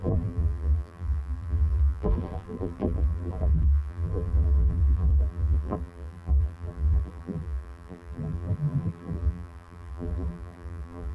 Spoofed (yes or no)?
yes